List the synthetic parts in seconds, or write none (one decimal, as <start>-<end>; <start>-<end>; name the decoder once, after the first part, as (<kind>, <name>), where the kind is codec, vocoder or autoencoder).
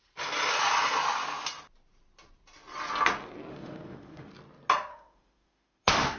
3.5-4.3 (autoencoder, DAC-VAE); 4.9-6.2